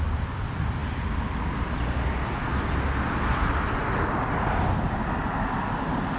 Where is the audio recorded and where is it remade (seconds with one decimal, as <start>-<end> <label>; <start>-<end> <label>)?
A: 0.0-6.2 recorded

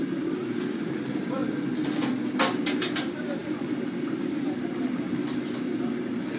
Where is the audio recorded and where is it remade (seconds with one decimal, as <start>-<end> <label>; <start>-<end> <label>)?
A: 0.0-0.4 remade; 0.4-0.9 recorded; 0.9-1.4 remade; 1.4-2.5 recorded; 2.5-5.2 remade; 5.2-6.4 recorded

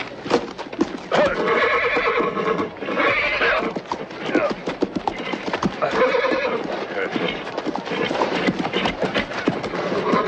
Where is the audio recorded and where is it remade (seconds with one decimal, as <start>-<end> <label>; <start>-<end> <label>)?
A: 0.0-4.6 recorded; 4.6-9.7 remade; 9.7-10.3 recorded

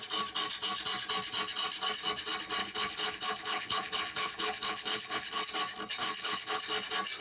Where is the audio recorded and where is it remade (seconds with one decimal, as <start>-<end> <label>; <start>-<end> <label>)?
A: 0.0-2.6 recorded; 2.6-5.4 remade; 5.4-6.0 recorded; 6.0-6.6 remade; 6.6-7.2 recorded

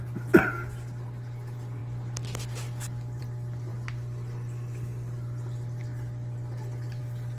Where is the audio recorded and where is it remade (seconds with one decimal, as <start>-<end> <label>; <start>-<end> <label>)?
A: 0.0-7.4 recorded

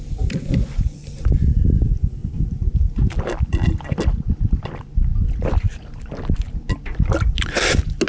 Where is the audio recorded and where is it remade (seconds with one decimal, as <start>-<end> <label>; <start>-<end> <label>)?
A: 0.0-8.1 recorded

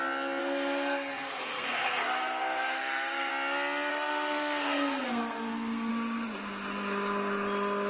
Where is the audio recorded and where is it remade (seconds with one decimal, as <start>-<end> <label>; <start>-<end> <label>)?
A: 0.0-0.4 recorded; 0.4-3.3 remade; 3.3-3.9 recorded; 3.9-5.9 remade; 5.9-7.9 recorded